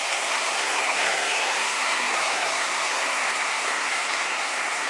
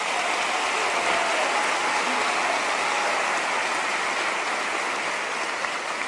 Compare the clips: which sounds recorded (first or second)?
second